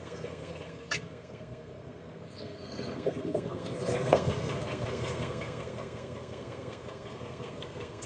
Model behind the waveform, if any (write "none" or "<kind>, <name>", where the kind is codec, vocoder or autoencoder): codec, SNAC